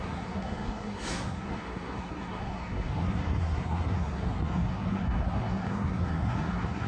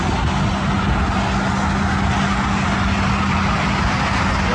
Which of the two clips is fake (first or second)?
first